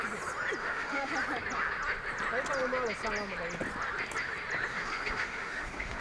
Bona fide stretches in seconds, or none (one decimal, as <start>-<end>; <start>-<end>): 0.0-0.6; 1.1-4.7